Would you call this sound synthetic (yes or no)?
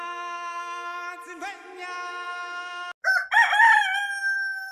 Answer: no